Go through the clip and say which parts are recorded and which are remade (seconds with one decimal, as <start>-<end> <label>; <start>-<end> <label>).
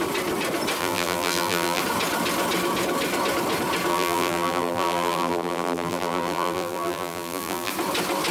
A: 0.0-0.8 recorded; 0.8-1.8 remade; 1.8-3.9 recorded; 3.9-7.7 remade; 7.7-8.3 recorded